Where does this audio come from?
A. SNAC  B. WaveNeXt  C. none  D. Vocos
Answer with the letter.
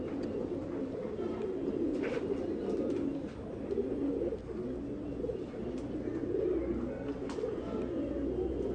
C